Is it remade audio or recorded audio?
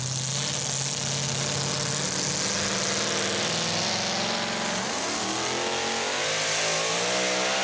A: recorded